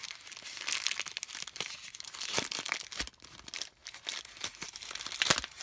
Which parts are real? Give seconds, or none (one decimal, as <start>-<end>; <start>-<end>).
0.0-5.6